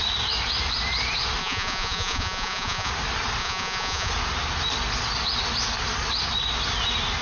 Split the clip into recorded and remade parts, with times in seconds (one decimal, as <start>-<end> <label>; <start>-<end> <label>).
0.0-1.4 recorded; 1.4-2.9 remade; 2.9-3.4 recorded; 3.4-4.1 remade; 4.1-7.2 recorded